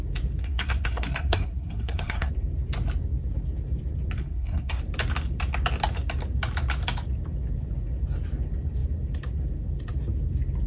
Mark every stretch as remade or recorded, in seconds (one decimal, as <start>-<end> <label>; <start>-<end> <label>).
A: 0.0-0.4 recorded; 0.4-2.3 remade; 2.3-4.2 recorded; 4.2-4.8 remade; 4.8-10.7 recorded